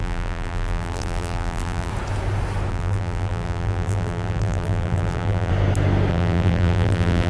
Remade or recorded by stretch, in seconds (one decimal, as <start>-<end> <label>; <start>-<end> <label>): 0.0-1.9 remade; 1.9-2.7 recorded; 2.7-5.5 remade; 5.5-6.1 recorded; 6.1-7.3 remade